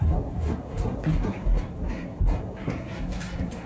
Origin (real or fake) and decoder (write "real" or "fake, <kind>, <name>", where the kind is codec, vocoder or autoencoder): fake, codec, SNAC